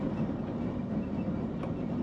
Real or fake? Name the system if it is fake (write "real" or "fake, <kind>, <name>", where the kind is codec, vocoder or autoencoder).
real